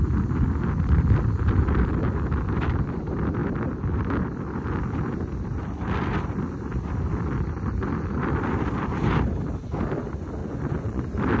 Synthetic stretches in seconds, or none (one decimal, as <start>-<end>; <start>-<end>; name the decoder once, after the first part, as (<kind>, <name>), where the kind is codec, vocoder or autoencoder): 10.4-11.0 (vocoder, Vocos)